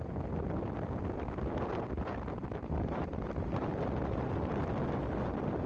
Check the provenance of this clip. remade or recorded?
remade